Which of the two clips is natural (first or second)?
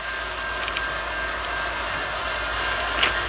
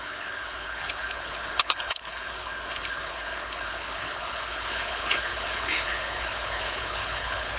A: first